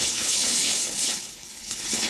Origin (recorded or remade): remade